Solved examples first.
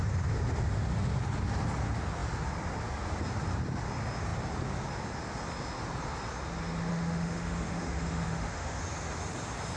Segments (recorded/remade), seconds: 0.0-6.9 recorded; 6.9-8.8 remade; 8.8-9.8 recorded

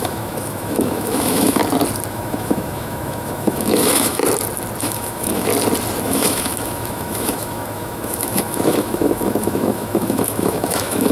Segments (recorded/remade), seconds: 0.0-1.6 remade; 1.6-2.1 recorded; 2.1-4.2 remade; 4.2-4.8 recorded; 4.8-5.5 remade; 5.5-6.0 recorded; 6.0-11.1 remade

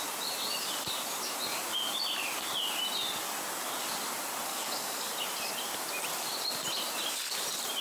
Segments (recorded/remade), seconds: 0.0-4.5 recorded; 4.5-5.1 remade; 5.1-7.8 recorded